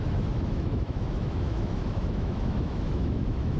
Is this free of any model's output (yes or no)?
no